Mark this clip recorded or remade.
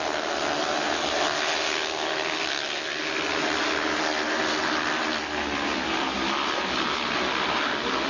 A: recorded